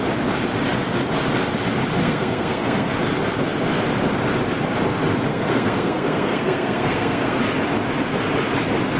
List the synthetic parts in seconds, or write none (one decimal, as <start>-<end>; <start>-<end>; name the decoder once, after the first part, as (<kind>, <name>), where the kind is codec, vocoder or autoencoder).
2.0-2.9 (codec, SNAC); 5.3-7.4